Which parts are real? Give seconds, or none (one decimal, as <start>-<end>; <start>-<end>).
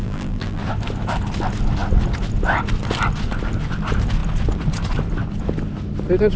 0.6-6.4